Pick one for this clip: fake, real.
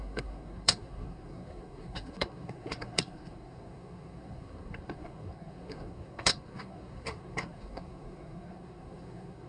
fake